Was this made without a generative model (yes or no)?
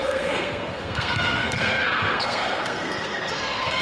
no